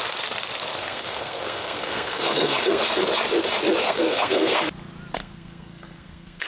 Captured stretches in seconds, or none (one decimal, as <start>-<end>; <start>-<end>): 0.0-0.8; 3.0-3.8; 4.6-5.2